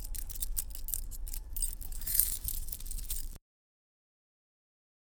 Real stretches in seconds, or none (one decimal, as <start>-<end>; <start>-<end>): 0.0-0.9; 2.8-3.2; 4.0-5.2